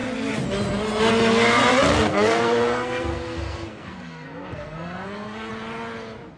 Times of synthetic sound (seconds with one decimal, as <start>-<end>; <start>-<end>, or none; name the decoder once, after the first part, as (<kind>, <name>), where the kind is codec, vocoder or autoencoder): 2.1-5.5 (codec, SNAC)

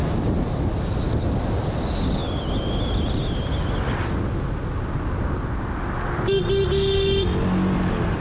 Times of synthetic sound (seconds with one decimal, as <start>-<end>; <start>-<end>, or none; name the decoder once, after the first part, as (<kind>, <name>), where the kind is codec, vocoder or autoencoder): none

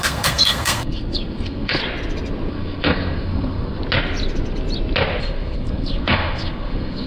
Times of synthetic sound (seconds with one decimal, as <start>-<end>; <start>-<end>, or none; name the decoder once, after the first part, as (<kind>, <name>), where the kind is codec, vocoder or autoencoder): 0.0-1.8 (codec, SNAC); 2.5-3.8; 5.2-7.1

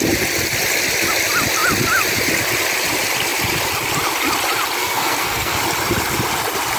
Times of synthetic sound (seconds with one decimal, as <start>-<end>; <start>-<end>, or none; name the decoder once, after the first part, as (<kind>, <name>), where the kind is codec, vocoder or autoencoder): 4.8-5.6 (codec, SNAC)

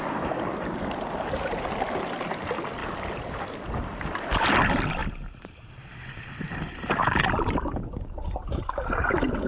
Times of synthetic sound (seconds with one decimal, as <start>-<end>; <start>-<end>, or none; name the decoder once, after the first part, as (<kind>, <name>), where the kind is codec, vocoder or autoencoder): none

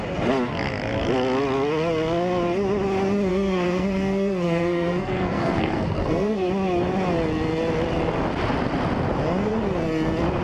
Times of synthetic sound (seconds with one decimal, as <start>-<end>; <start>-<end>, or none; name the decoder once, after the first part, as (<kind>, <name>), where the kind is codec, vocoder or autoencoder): 3.3-6.5 (codec, SNAC)